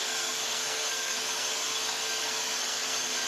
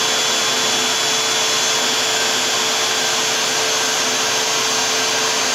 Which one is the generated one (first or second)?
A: first